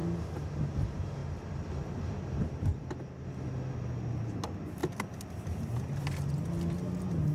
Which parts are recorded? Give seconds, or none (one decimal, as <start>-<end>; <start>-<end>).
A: 0.0-7.3